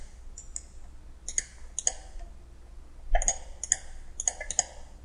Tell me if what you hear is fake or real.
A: real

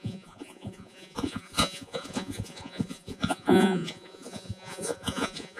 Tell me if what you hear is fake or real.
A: fake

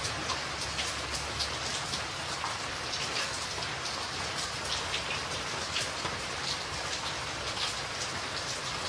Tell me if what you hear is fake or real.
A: real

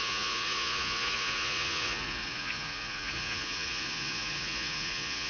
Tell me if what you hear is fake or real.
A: fake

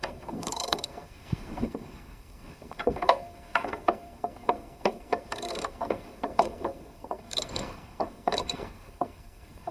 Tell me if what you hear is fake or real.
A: fake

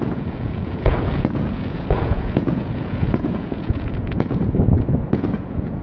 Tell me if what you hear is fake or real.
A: fake